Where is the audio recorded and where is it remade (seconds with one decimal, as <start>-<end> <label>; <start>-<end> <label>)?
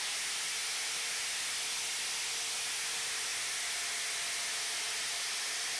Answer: 0.0-5.8 recorded